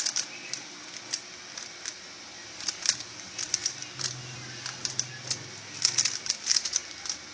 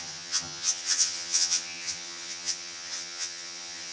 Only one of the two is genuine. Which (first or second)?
first